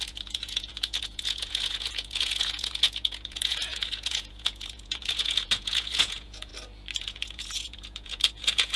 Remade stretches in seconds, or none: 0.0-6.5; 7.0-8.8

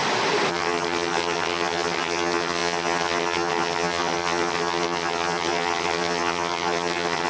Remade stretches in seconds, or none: 0.5-7.3

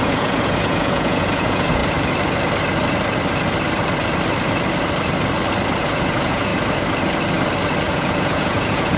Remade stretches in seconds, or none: 0.0-1.8; 5.8-6.5; 7.9-9.0

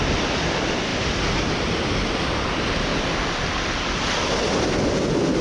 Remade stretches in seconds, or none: none